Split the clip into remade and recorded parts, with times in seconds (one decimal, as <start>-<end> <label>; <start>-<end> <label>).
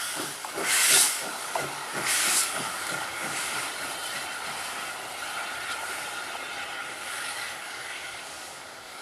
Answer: 0.0-3.4 remade; 3.4-6.8 recorded; 6.8-9.0 remade